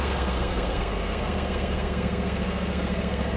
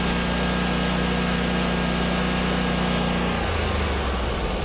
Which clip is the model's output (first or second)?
first